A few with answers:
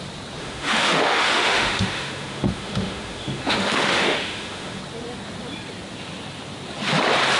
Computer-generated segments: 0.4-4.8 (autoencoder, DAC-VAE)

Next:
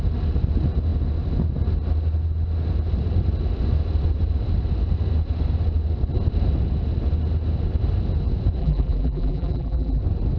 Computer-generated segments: 8.6-10.0 (vocoder, BigVGAN v2)

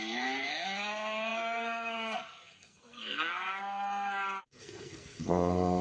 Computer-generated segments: 0.0-5.8 (codec, SNAC)

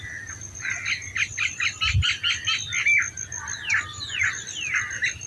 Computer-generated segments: 3.9-4.4 (vocoder, Vocos)

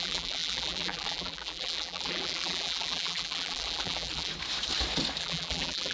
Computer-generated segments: 0.0-4.3 (vocoder, BigVGAN v2); 5.2-5.9

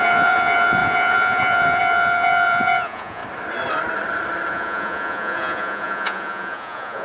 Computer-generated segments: 0.0-3.2 (vocoder, Vocos); 4.5-7.0